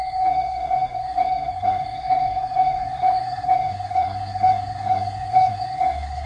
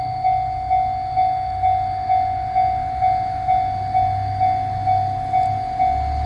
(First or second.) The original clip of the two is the second